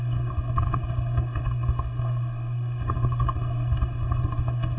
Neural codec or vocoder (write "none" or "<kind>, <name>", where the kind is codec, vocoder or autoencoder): codec, SNAC